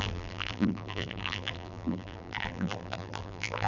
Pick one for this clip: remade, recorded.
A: remade